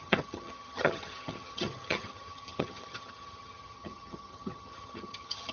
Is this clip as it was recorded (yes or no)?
no